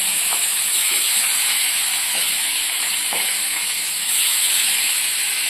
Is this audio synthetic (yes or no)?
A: yes